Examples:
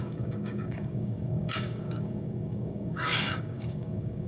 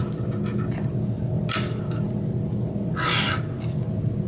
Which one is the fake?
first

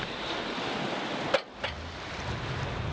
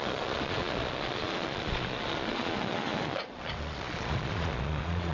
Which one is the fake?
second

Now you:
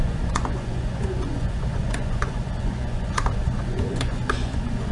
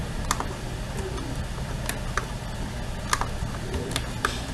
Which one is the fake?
first